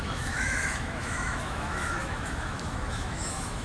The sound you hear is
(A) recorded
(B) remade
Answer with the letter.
B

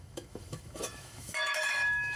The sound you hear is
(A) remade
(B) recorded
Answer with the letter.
A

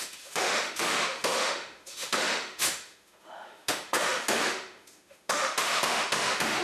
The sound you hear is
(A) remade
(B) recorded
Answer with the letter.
A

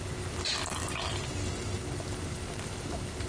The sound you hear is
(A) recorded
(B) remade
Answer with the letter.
A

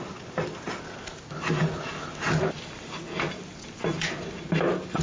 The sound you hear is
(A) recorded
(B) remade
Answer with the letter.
A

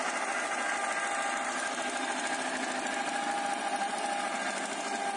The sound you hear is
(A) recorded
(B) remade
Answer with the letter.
A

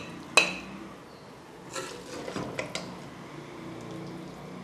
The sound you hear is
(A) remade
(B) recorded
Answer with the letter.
B